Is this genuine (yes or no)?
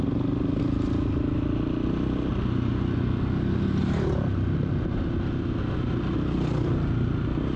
yes